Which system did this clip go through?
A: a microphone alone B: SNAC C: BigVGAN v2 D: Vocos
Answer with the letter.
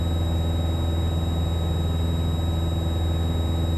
A